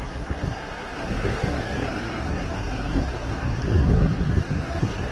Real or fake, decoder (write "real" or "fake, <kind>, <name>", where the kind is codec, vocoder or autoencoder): fake, codec, SNAC